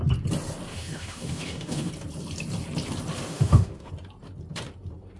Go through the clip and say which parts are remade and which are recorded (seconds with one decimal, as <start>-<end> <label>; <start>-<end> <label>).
0.0-0.7 recorded; 0.7-1.9 remade; 1.9-3.3 recorded; 3.3-3.9 remade; 3.9-5.2 recorded